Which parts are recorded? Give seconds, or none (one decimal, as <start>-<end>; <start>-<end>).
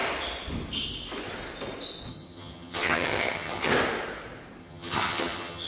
0.0-2.1; 3.7-4.6